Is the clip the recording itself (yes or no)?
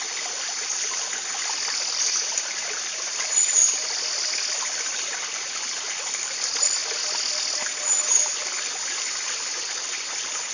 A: yes